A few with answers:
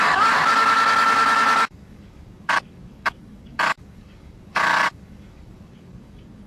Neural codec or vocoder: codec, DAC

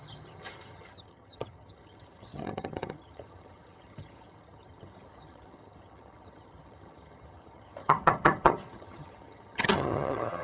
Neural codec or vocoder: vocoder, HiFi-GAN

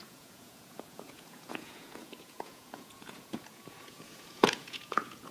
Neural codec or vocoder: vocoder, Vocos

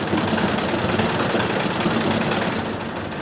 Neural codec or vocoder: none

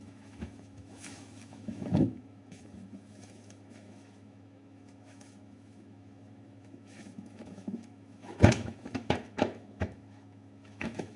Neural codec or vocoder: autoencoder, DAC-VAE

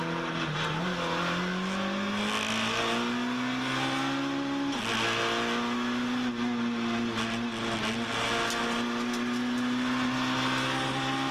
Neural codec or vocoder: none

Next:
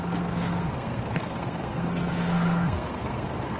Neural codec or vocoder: codec, SNAC